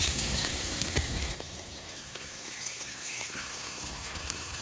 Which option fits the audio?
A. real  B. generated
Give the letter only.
B